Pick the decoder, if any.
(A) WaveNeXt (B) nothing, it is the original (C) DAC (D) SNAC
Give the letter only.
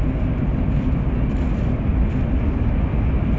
B